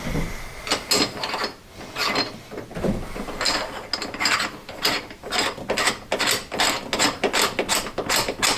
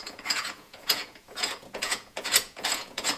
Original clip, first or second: first